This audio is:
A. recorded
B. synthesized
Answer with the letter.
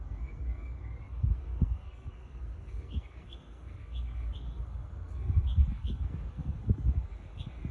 B